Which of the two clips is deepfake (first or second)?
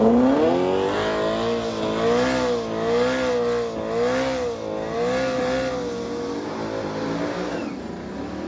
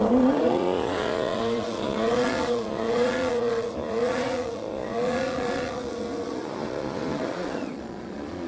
second